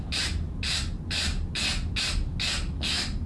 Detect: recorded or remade recorded